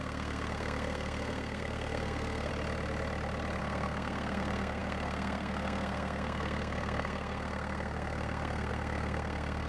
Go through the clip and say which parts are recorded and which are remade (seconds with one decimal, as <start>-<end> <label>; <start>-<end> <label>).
0.0-2.5 remade; 2.5-3.6 recorded; 3.6-9.7 remade

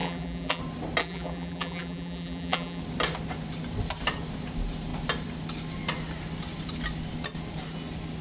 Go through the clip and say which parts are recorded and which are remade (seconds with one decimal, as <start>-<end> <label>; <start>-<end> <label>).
0.0-0.6 remade; 0.6-1.0 recorded; 1.0-2.8 remade; 2.8-8.2 recorded

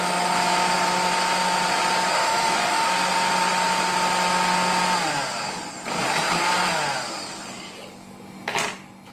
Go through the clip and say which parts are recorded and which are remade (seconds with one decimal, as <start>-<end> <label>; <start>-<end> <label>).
0.0-2.1 recorded; 2.1-2.9 remade; 2.9-9.1 recorded

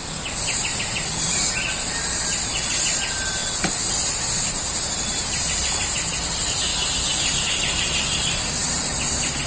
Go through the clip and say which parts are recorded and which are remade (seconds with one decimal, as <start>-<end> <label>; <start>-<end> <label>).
0.0-3.4 recorded; 3.4-3.9 remade; 3.9-9.5 recorded

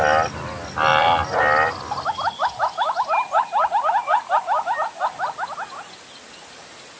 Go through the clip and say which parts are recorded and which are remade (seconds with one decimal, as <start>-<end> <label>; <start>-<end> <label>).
0.0-7.0 recorded